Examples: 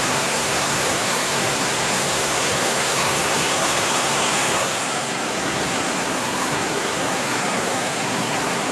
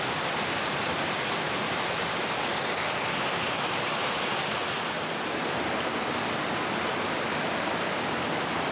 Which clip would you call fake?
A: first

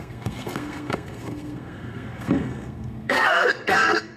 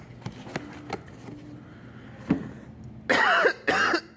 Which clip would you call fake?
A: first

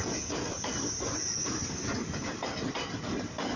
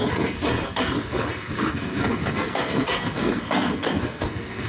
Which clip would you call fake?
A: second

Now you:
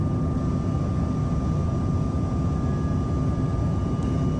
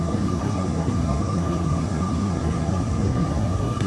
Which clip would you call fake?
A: second